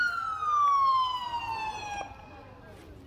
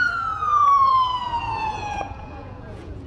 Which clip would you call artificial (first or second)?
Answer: second